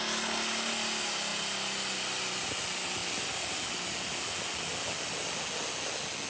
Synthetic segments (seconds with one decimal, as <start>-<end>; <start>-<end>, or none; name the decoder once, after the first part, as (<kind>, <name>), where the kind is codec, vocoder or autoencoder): none